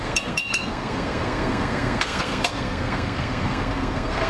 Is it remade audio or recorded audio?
remade